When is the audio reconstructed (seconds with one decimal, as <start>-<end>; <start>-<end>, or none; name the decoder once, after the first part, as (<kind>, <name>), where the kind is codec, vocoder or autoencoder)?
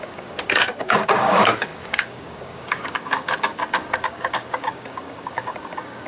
0.0-6.1 (codec, DAC)